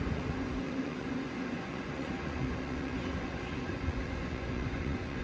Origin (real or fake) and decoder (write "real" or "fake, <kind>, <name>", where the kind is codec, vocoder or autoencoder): fake, vocoder, Vocos